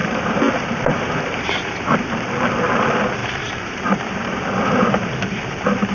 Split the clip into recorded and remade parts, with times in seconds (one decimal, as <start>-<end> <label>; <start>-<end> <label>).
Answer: 0.0-2.3 remade; 2.3-3.2 recorded; 3.2-5.9 remade